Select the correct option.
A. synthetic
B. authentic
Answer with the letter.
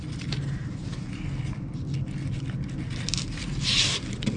B